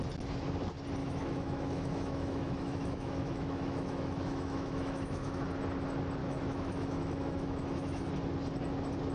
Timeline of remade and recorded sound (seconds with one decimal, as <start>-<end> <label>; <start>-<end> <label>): 0.0-1.0 recorded; 1.0-5.4 remade; 5.4-6.2 recorded; 6.2-8.1 remade; 8.1-9.1 recorded